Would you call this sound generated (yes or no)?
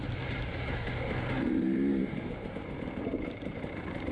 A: yes